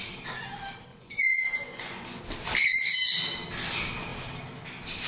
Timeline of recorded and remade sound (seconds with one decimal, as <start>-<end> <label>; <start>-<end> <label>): 0.0-0.9 recorded; 0.9-2.2 remade; 2.2-5.1 recorded

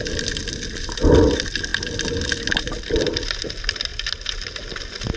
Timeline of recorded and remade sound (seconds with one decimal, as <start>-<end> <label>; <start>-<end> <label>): 0.0-5.2 recorded

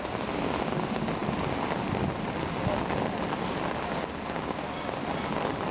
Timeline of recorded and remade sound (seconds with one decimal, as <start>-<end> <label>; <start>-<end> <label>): 0.0-5.7 recorded

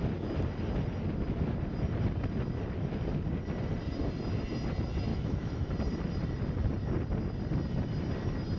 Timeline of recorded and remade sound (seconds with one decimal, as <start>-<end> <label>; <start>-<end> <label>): 0.0-5.1 recorded; 5.1-5.7 remade; 5.7-8.6 recorded

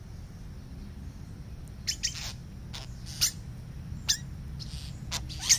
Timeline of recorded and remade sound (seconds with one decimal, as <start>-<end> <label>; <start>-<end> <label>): 0.0-5.6 recorded

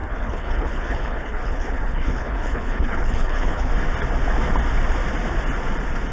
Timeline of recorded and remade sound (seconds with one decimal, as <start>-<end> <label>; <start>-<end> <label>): 0.0-3.7 remade; 3.7-6.1 recorded

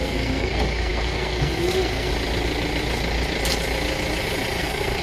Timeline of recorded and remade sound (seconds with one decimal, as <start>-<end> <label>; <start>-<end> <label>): 0.0-2.1 remade; 2.1-4.6 recorded; 4.6-5.0 remade

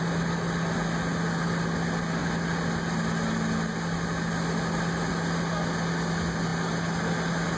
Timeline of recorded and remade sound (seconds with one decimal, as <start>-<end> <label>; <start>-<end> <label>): 0.0-7.6 recorded